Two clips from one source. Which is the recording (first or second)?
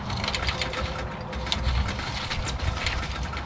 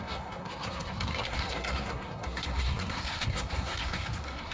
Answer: first